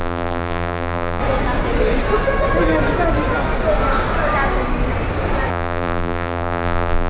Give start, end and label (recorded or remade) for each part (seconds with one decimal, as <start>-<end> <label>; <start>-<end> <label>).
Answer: 0.0-1.2 remade; 1.2-5.5 recorded; 5.5-7.1 remade